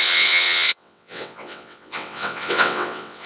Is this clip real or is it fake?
fake